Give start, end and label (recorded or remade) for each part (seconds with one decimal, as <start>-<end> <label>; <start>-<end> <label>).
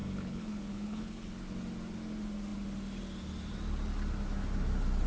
0.0-1.3 remade; 1.3-5.1 recorded